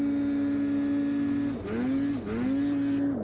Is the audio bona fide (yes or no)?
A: yes